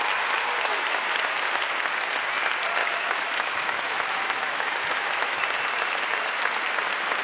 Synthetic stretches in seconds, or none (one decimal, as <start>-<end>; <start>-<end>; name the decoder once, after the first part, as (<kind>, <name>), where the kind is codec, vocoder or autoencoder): 2.8-5.4 (autoencoder, DAC-VAE)